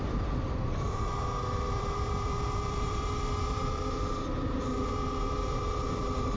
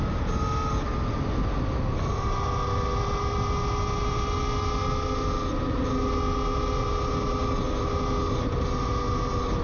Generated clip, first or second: first